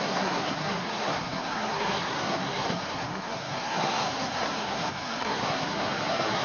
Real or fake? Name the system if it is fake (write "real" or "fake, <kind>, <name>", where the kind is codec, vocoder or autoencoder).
fake, codec, SNAC